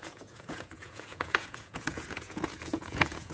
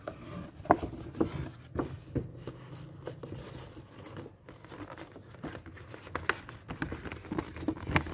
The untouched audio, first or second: second